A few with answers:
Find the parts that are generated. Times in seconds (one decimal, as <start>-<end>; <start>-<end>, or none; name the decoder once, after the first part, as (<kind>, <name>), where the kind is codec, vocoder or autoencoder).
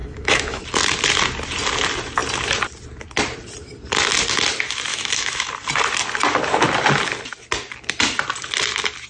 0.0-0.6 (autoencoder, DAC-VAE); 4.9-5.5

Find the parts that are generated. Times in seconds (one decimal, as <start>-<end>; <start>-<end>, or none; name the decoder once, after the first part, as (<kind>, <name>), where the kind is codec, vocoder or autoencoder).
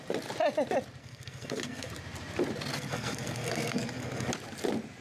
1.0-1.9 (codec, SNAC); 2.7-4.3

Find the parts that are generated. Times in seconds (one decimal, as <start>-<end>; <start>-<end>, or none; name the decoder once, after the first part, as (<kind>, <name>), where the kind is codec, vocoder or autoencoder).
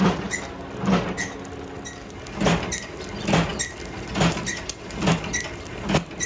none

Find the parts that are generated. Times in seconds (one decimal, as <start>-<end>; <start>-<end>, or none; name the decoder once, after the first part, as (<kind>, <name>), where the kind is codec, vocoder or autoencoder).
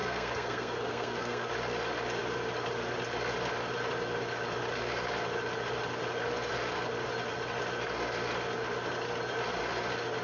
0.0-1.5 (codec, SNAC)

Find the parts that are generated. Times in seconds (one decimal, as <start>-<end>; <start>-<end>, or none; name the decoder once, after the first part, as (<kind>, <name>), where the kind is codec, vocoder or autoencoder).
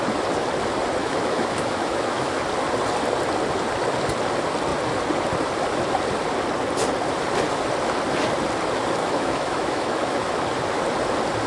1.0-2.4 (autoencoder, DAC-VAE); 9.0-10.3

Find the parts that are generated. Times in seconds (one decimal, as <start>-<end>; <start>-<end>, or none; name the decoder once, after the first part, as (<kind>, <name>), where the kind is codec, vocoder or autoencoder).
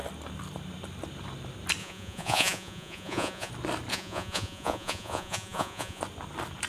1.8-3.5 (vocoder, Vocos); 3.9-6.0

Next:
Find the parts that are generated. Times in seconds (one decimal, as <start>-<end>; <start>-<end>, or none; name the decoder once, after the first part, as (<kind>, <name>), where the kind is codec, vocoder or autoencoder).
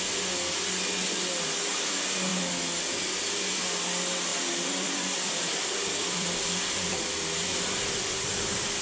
4.3-8.8 (vocoder, BigVGAN v2)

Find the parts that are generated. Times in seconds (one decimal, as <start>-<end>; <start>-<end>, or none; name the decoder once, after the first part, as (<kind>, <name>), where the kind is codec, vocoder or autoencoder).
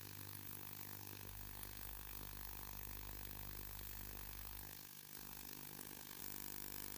0.0-6.2 (codec, SNAC)